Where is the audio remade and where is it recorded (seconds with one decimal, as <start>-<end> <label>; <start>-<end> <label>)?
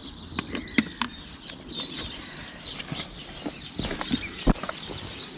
0.0-5.4 recorded